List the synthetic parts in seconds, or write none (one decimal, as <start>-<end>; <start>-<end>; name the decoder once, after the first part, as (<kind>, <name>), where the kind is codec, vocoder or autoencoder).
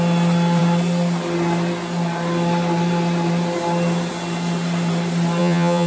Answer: 5.4-5.9 (vocoder, HiFi-GAN)